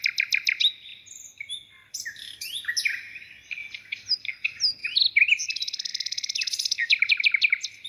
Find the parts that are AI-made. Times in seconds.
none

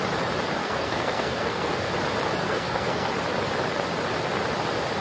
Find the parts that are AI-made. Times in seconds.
0.6-1.9; 2.4-3.1

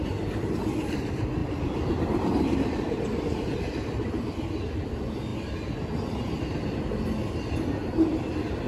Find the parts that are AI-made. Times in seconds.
0.0-5.3; 6.4-8.7

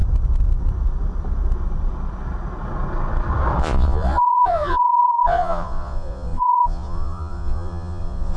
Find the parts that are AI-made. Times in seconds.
3.6-8.4